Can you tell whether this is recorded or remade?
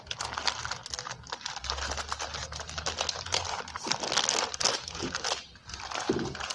recorded